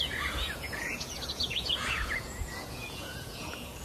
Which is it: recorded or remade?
remade